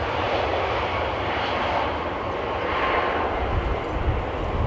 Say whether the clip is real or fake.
real